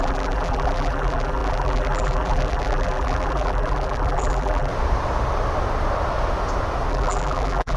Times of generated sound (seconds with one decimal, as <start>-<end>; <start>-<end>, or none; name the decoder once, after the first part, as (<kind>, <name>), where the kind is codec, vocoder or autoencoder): 0.0-4.7 (vocoder, BigVGAN v2); 6.9-7.8

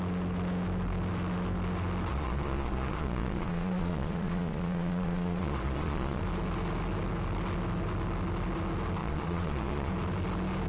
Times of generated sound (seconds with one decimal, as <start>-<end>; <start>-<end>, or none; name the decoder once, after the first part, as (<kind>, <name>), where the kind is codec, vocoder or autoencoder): 2.1-6.2 (vocoder, Vocos); 9.0-9.9

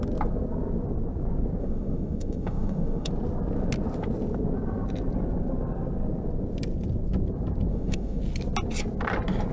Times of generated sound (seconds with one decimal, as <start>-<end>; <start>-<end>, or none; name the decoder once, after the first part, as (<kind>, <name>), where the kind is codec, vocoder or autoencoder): 1.6-3.1 (autoencoder, DAC-VAE); 7.7-8.2

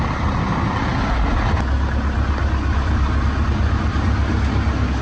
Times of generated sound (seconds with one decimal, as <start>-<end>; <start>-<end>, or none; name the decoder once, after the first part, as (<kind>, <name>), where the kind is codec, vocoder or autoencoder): none